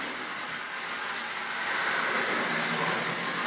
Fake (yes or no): no